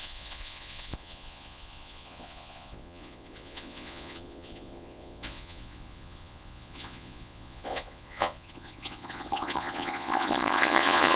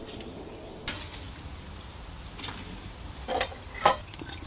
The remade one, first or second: first